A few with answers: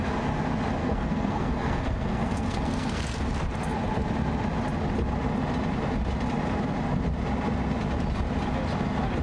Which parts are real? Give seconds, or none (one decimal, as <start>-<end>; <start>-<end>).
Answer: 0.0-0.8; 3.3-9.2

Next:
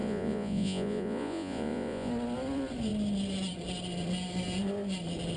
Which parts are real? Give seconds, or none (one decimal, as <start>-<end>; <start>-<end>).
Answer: 2.1-5.4

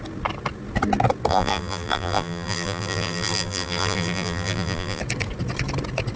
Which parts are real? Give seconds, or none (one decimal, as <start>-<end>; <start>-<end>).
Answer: 0.0-1.3; 5.0-6.2

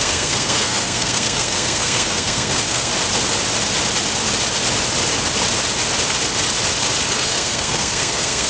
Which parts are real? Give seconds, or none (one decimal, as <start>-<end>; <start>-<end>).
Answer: 2.9-7.1

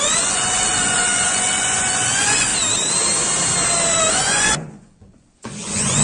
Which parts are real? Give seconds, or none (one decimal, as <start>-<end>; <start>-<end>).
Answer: 2.5-4.1